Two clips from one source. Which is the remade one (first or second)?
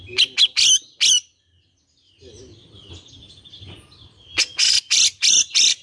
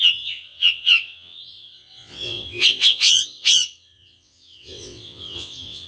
second